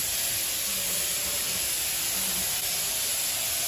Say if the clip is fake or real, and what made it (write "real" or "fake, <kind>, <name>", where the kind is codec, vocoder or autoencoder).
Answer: real